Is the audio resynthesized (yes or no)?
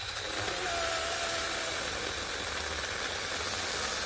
no